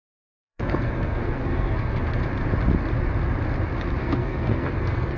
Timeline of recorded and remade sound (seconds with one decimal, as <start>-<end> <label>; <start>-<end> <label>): 0.0-2.2 remade; 2.2-4.0 recorded; 4.0-5.2 remade